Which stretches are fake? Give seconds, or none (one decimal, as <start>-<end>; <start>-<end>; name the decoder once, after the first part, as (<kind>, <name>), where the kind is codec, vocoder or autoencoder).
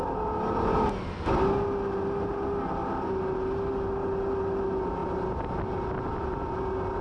none